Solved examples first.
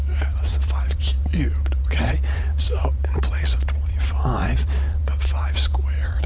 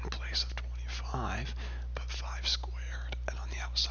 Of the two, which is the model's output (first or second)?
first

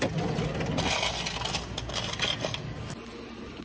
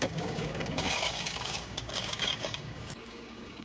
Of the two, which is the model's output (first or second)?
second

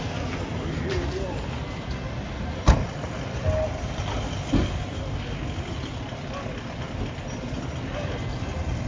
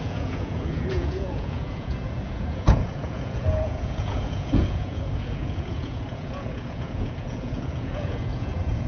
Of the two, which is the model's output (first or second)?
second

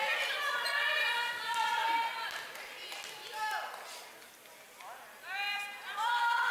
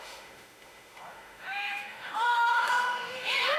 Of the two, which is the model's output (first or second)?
second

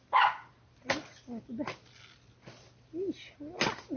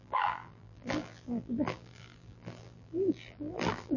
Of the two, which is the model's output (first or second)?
second